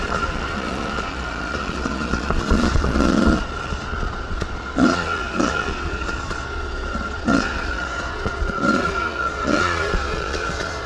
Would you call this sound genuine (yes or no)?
no